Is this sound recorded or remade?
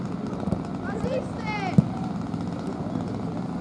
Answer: recorded